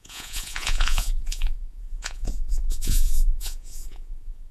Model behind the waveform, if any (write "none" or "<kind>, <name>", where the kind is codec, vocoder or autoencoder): vocoder, Vocos